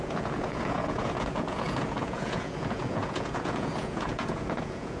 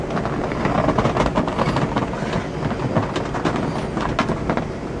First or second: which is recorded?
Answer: second